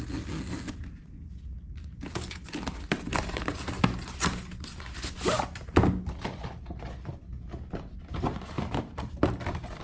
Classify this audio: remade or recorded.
recorded